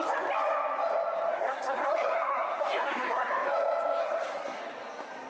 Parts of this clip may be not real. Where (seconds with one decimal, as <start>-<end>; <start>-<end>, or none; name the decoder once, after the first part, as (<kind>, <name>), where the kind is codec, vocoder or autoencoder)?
1.3-3.3 (codec, SNAC); 4.0-4.6